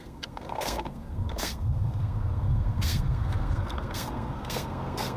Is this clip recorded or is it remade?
remade